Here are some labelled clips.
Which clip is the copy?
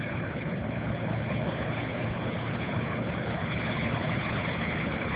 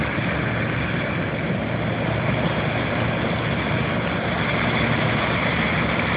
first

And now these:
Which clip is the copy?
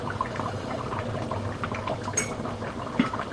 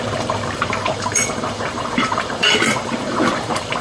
second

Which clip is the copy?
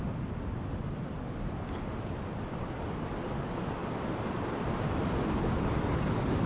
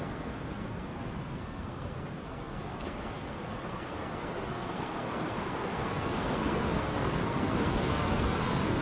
second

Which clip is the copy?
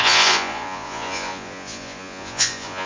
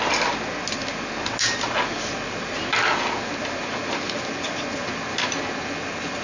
first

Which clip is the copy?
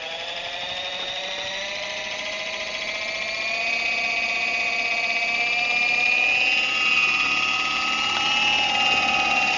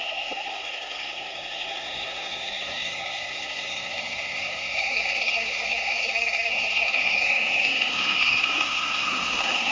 second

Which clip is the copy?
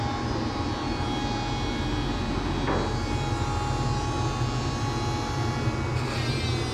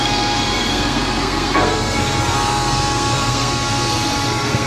second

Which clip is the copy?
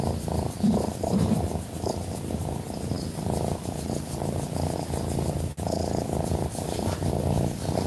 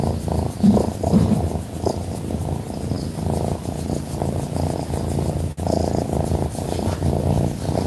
first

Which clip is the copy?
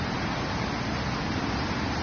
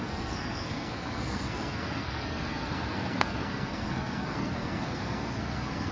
second